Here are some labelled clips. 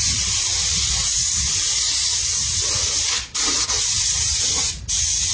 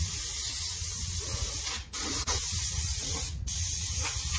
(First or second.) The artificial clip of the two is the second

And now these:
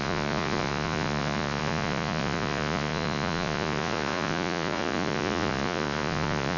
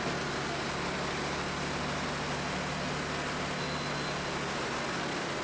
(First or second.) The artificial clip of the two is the first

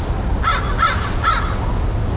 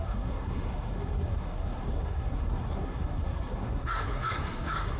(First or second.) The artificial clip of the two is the second